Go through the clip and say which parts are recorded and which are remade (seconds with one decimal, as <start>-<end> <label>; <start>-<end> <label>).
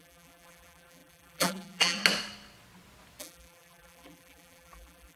0.0-2.0 remade; 2.0-3.2 recorded; 3.2-5.2 remade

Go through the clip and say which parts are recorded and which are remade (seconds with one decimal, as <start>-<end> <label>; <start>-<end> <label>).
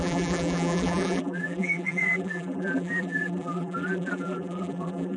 0.0-5.2 remade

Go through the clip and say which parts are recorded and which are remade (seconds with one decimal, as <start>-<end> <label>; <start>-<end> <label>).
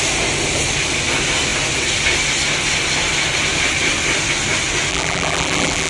0.0-4.9 recorded; 4.9-5.9 remade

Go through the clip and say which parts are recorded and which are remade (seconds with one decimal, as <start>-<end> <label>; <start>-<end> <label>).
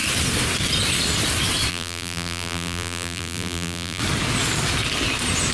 0.0-1.7 recorded; 1.7-4.0 remade; 4.0-5.5 recorded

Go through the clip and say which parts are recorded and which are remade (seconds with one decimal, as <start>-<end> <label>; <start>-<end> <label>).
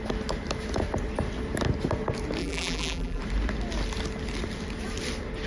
0.0-2.4 recorded; 2.4-3.2 remade; 3.2-5.5 recorded